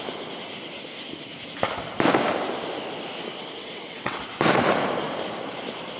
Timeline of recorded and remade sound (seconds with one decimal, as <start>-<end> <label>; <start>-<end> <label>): 0.0-3.6 recorded; 3.6-4.2 remade; 4.2-6.0 recorded